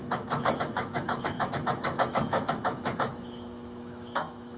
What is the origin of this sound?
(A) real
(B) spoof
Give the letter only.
B